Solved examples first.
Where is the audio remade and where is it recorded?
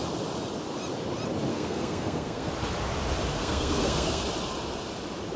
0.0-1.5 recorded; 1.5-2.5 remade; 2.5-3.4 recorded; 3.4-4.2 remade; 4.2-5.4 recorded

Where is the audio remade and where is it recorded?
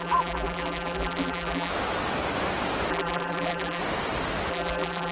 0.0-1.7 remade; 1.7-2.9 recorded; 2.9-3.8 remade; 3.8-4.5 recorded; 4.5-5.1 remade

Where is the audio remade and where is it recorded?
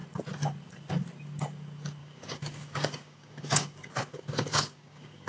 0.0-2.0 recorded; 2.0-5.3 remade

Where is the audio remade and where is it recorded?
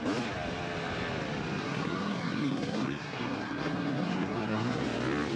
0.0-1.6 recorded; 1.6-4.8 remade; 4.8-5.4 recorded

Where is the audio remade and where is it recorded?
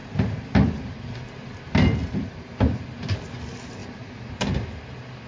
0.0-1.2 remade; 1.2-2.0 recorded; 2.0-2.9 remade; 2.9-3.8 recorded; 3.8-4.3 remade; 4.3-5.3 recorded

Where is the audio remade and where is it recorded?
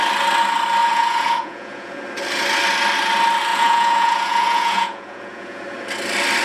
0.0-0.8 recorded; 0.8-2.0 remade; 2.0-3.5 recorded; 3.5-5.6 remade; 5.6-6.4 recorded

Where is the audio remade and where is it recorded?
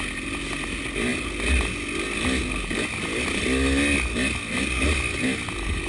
0.0-5.9 recorded